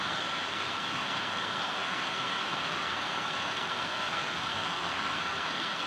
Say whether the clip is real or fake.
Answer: fake